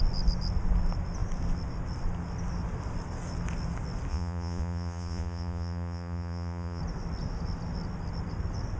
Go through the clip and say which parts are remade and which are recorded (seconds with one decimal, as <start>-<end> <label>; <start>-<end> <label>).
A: 0.0-4.1 recorded; 4.1-6.8 remade; 6.8-8.8 recorded